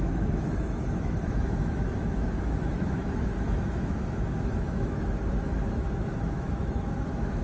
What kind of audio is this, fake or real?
fake